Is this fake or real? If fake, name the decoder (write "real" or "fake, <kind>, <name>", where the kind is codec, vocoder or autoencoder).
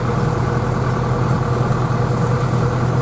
real